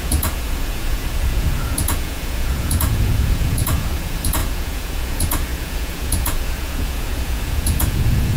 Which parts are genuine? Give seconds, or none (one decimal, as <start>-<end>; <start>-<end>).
none